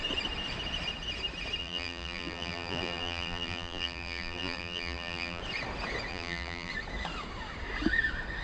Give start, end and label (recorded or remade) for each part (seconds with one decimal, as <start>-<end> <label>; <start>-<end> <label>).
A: 0.0-1.6 recorded; 1.6-5.4 remade; 5.4-6.1 recorded; 6.1-6.7 remade; 6.7-8.4 recorded